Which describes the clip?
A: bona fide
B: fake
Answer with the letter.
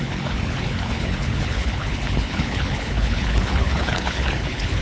B